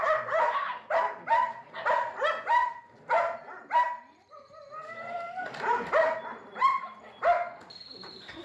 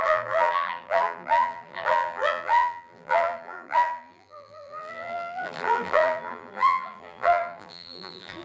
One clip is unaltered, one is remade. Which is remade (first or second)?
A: second